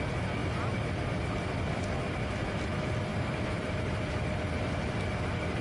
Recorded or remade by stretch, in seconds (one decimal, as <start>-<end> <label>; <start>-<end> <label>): 0.0-0.4 recorded; 0.4-1.0 remade; 1.0-3.1 recorded; 3.1-4.1 remade; 4.1-5.6 recorded